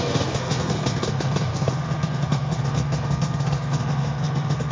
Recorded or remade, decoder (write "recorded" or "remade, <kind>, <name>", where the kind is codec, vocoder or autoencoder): remade, codec, SNAC